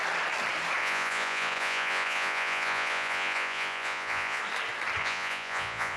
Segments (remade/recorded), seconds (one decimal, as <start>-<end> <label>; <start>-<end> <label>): 0.0-0.8 recorded; 0.8-4.4 remade; 4.4-5.0 recorded; 5.0-6.0 remade